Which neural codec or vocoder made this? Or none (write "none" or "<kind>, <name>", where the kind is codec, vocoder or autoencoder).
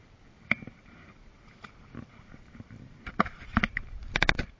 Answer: vocoder, BigVGAN v2